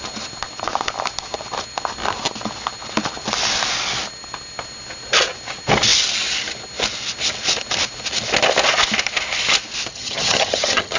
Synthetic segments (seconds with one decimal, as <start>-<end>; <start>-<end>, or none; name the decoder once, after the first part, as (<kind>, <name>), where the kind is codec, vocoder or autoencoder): 9.9-11.0 (vocoder, HiFi-GAN)